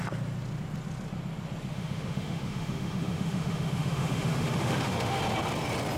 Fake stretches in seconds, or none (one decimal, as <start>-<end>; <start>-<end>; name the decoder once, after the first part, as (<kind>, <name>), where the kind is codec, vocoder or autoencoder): 1.7-5.2 (autoencoder, DAC-VAE)